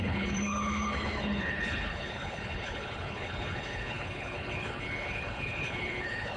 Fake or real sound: fake